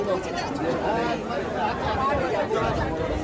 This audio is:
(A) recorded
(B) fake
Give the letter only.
A